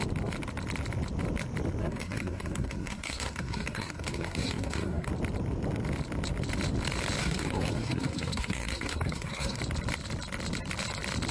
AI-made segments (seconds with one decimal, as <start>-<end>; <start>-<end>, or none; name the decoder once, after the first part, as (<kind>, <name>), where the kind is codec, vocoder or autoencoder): 1.8-5.1 (codec, SNAC); 7.2-9.6

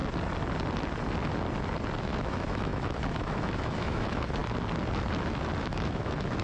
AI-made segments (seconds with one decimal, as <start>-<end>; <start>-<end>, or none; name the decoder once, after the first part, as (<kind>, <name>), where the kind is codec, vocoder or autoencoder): 2.0-4.4 (autoencoder, DAC-VAE); 5.6-6.4

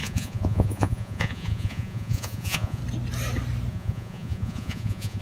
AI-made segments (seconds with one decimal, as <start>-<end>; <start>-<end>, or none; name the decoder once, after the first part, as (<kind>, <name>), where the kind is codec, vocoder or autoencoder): 0.0-2.8 (vocoder, Vocos); 3.7-5.2

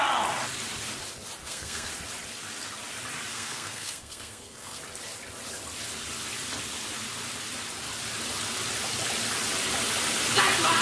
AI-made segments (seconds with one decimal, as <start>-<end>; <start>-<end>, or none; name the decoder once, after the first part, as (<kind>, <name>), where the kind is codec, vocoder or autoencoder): 1.4-1.9 (codec, SNAC); 3.3-4.8

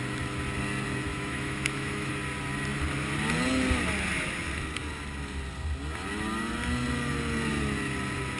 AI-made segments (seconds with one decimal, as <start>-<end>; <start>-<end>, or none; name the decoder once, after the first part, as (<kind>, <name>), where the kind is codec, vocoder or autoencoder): 1.1-2.1 (autoencoder, DAC-VAE)

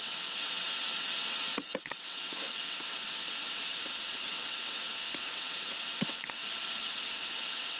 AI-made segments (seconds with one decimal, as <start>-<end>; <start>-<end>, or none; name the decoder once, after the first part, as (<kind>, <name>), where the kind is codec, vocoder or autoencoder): 0.0-6.4 (vocoder, WaveNeXt); 6.9-7.8

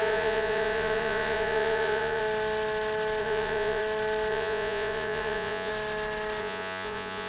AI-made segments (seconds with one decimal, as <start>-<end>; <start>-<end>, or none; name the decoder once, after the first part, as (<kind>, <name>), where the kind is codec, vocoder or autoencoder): 0.0-2.2 (vocoder, Vocos); 3.2-3.8; 4.3-5.7; 6.4-7.3

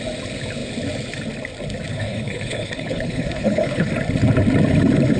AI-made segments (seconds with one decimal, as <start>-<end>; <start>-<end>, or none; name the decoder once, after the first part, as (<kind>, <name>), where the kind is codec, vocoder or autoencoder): 1.9-3.9 (codec, HILCodec)